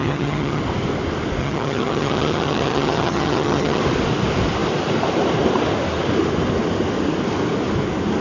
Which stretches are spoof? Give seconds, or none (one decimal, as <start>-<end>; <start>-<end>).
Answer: 0.0-0.6; 1.4-3.8